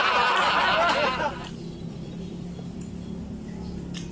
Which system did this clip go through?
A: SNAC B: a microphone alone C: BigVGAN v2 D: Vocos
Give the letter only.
B